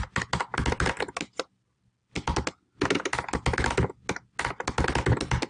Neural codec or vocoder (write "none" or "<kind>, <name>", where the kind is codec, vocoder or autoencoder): none